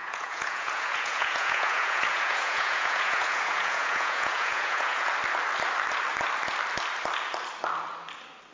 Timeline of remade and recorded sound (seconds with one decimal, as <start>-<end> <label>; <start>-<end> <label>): 0.0-5.1 remade; 5.1-8.5 recorded